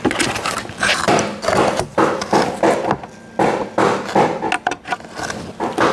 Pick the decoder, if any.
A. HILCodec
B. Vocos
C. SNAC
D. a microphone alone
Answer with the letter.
D